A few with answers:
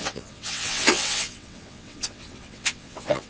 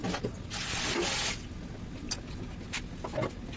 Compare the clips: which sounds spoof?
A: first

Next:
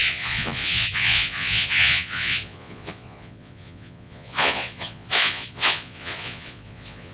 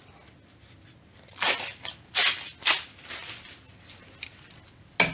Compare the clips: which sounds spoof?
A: first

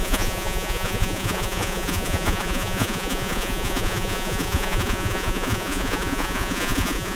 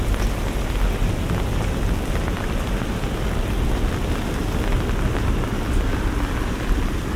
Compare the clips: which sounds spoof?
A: first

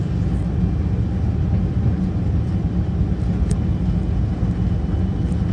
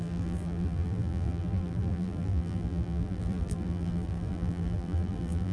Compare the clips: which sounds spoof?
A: second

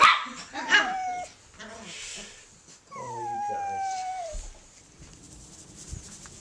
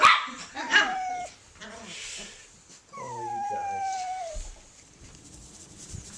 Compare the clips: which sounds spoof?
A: second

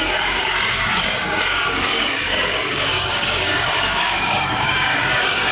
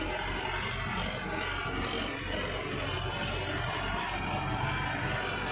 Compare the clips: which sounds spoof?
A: first